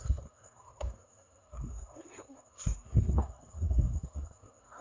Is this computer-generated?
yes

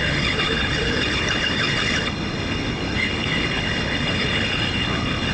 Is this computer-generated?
yes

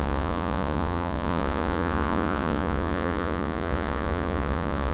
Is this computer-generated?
yes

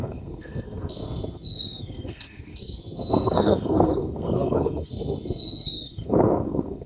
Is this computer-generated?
yes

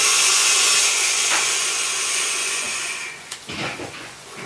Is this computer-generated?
yes